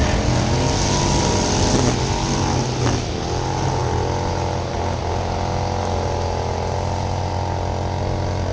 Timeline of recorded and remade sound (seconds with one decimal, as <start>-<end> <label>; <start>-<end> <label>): 0.0-8.5 recorded